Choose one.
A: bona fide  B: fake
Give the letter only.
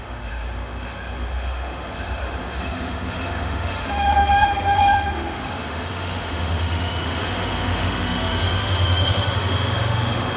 B